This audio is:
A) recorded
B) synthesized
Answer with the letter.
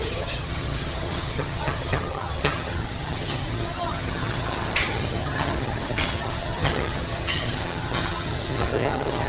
B